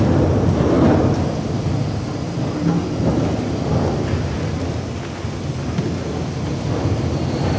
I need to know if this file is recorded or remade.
recorded